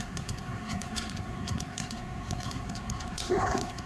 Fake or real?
fake